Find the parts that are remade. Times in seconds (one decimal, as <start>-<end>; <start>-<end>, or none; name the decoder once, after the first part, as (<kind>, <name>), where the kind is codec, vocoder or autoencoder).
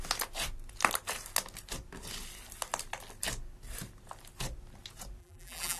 5.2-5.8 (vocoder, BigVGAN v2)